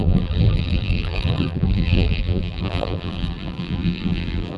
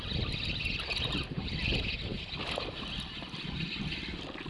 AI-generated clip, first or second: first